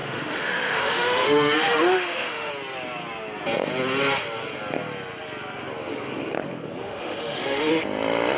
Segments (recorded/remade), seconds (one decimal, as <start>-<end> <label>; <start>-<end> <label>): 0.0-2.5 remade; 2.5-6.8 recorded; 6.8-7.7 remade; 7.7-8.4 recorded